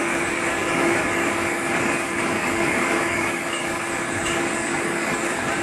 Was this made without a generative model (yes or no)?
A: no